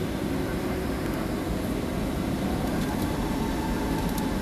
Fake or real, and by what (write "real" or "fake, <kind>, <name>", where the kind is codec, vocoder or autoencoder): real